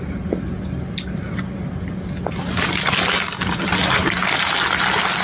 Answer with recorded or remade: recorded